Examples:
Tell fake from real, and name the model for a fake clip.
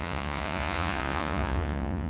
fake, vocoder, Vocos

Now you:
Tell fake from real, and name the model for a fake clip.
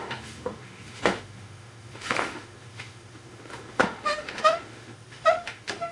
fake, autoencoder, DAC-VAE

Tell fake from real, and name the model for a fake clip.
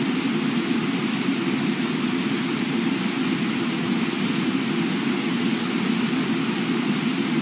real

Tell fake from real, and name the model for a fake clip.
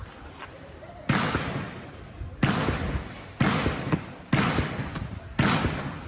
real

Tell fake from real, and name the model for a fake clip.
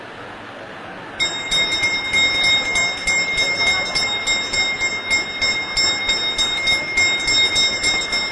real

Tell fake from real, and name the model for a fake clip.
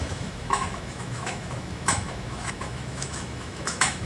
fake, autoencoder, DAC-VAE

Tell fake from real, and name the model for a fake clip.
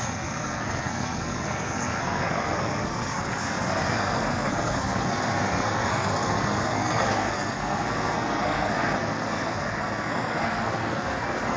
fake, codec, SNAC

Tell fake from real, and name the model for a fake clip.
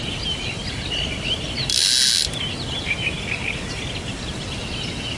real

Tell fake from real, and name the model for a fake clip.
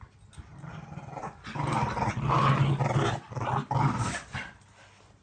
real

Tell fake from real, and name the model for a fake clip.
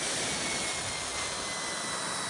real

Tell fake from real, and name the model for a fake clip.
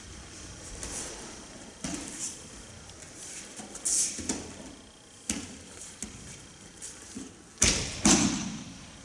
real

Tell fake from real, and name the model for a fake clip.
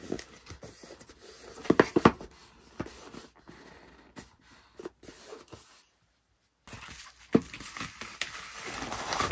real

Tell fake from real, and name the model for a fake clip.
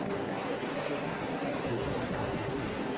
fake, codec, SNAC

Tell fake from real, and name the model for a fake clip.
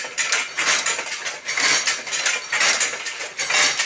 real